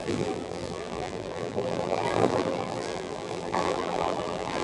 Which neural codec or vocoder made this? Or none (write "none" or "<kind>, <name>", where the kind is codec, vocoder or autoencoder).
vocoder, BigVGAN v2